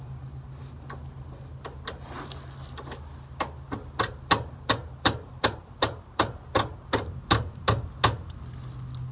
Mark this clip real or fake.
real